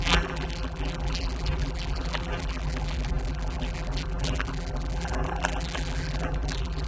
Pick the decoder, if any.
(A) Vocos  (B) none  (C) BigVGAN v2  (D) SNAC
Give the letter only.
C